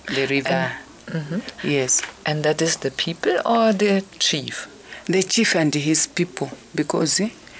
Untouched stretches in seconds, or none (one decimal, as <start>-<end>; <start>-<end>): 0.0-7.6